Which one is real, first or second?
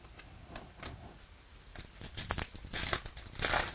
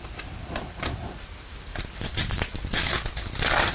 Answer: first